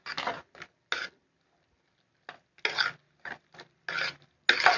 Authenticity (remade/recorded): recorded